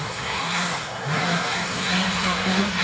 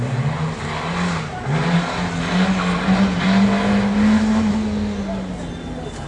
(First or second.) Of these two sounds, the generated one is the first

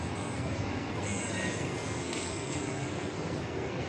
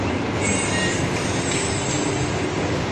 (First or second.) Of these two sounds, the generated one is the first